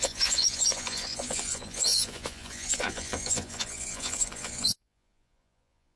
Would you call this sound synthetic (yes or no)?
yes